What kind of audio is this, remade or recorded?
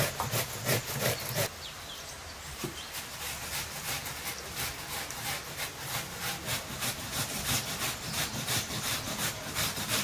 remade